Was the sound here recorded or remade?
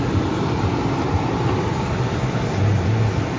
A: recorded